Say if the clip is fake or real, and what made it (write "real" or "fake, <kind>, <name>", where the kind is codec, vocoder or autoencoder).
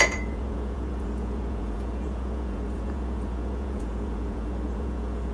fake, vocoder, Vocos